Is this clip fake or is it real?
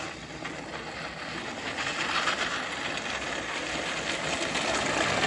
real